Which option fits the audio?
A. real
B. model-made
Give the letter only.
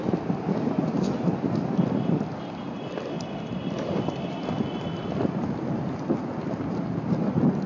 A